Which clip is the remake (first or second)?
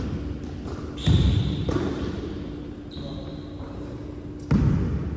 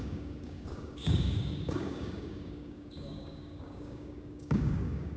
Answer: second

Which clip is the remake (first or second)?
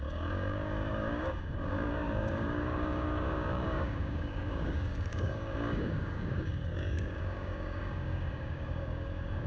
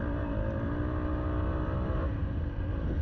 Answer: first